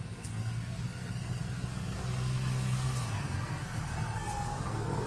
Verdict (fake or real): fake